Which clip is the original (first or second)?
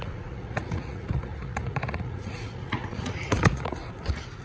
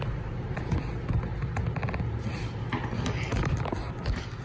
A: second